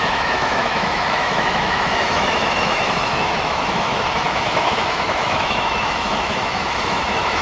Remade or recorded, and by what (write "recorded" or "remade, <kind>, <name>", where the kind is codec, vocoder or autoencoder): remade, autoencoder, DAC-VAE